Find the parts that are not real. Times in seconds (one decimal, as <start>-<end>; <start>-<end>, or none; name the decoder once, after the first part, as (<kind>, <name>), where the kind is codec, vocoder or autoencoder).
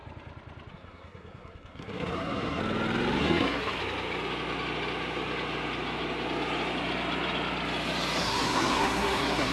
0.7-2.6 (codec, SNAC); 3.2-3.8; 8.2-9.5